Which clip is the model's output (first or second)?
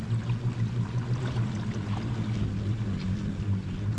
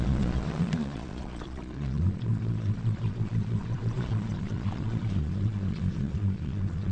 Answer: second